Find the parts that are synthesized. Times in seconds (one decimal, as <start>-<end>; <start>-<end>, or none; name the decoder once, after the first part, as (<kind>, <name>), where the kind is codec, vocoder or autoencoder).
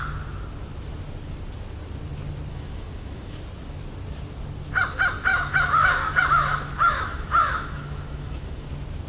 2.5-3.4 (autoencoder, DAC-VAE); 5.3-8.7